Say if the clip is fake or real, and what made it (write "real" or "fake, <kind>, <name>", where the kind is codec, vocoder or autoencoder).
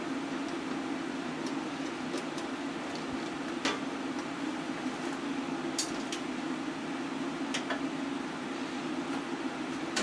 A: real